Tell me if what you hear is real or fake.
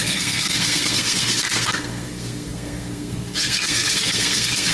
fake